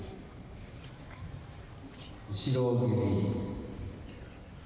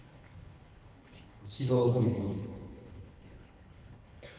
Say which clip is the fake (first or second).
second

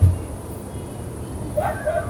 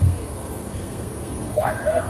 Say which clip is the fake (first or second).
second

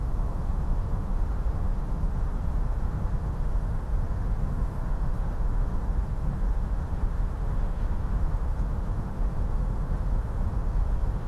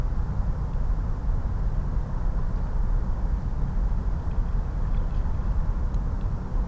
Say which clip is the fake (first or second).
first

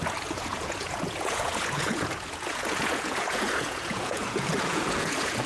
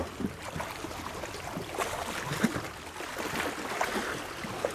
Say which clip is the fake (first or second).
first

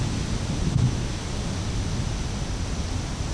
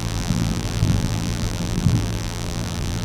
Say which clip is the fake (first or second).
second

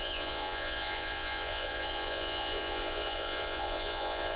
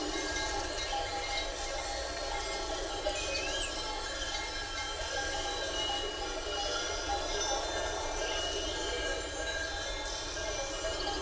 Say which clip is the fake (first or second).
first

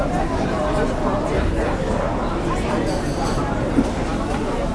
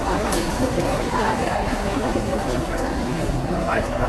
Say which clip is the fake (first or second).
second